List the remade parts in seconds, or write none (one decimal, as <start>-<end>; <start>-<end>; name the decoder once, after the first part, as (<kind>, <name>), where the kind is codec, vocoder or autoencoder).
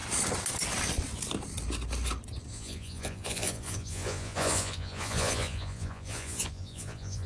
2.5-7.3 (vocoder, Vocos)